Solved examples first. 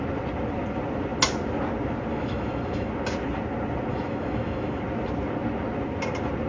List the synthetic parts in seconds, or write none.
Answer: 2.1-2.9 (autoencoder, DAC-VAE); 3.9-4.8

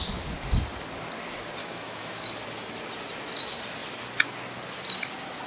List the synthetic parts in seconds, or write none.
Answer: 1.6-2.2 (autoencoder, DAC-VAE)

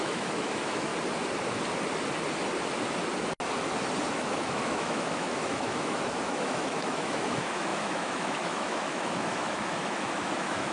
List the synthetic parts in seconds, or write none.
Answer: 0.0-0.9 (autoencoder, DAC-VAE); 4.1-10.7

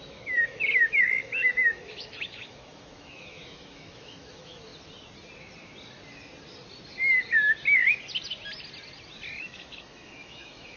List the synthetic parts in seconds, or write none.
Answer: 0.0-4.7 (autoencoder, DAC-VAE); 9.4-10.8

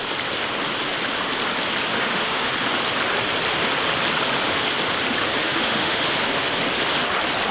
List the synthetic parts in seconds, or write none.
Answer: 1.9-2.5 (autoencoder, DAC-VAE); 5.4-6.1